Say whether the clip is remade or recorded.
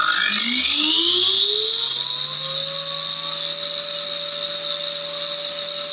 recorded